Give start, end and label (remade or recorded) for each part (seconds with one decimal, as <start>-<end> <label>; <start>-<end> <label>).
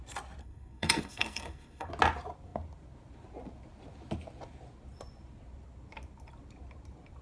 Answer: 0.0-0.4 recorded; 0.4-1.9 remade; 1.9-7.2 recorded